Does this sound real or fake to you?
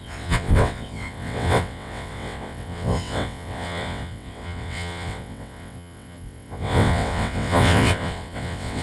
fake